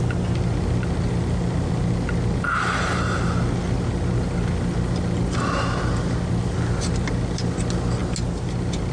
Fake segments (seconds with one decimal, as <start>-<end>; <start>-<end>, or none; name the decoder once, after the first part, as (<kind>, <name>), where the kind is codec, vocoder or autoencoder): none